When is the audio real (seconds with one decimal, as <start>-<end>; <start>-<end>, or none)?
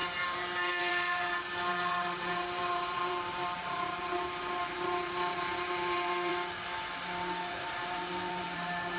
6.3-7.5